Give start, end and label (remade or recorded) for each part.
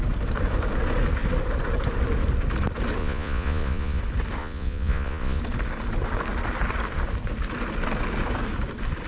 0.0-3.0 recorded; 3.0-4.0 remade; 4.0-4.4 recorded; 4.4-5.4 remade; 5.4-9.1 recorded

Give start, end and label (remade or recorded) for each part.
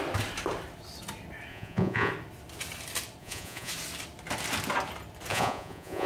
0.0-1.5 recorded; 1.5-2.1 remade; 2.1-3.2 recorded; 3.2-3.7 remade; 3.7-5.3 recorded; 5.3-6.1 remade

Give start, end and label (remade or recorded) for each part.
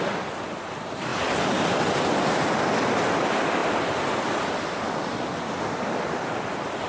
0.0-6.9 recorded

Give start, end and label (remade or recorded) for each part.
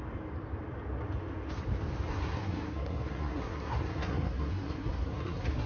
0.0-2.1 recorded; 2.1-5.7 remade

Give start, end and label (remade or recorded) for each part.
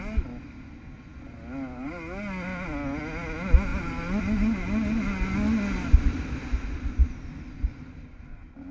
0.0-8.7 recorded